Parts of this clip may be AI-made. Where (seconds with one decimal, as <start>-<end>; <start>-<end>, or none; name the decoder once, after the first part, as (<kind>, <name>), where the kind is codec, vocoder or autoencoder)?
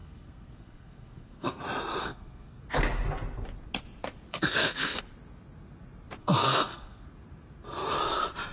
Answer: 0.0-1.6 (codec, SNAC); 2.0-2.6; 4.3-5.0; 6.2-7.1